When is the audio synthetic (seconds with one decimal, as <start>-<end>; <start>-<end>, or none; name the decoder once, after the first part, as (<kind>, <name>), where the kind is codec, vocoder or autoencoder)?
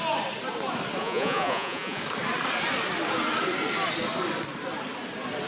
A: 1.0-2.0 (vocoder, Vocos)